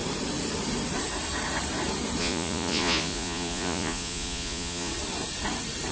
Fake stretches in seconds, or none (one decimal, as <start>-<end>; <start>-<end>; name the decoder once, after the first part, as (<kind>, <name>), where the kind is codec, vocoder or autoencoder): 2.2-4.9 (vocoder, Vocos)